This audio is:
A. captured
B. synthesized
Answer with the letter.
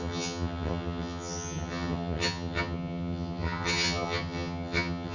B